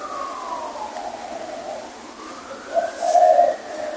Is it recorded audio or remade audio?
recorded